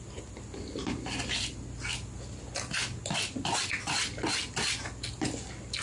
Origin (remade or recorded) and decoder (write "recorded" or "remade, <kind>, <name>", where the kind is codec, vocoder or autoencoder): recorded